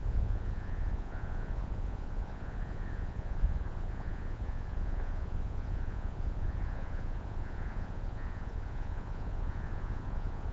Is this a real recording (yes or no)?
no